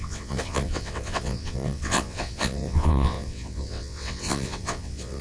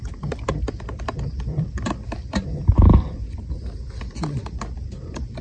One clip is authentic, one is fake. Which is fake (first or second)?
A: first